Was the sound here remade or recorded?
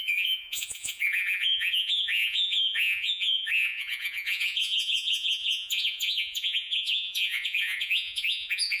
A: remade